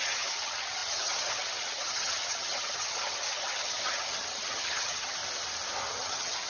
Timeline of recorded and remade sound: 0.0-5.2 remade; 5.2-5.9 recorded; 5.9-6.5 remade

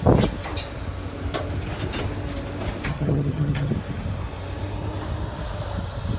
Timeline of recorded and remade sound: 0.0-2.9 recorded; 2.9-3.7 remade; 3.7-6.2 recorded

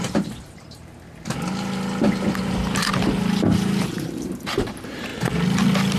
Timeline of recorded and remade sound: 0.0-0.9 remade; 0.9-2.4 recorded; 2.4-5.1 remade; 5.1-6.0 recorded

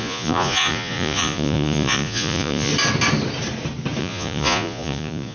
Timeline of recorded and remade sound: 0.0-2.7 remade; 2.7-4.0 recorded; 4.0-5.3 remade

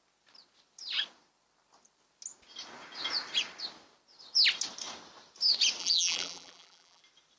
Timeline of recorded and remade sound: 0.0-5.8 recorded; 5.8-7.0 remade; 7.0-7.4 recorded

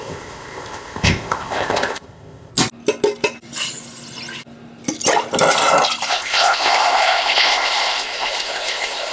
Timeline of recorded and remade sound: 0.0-2.5 remade; 2.5-6.1 recorded; 6.1-9.1 remade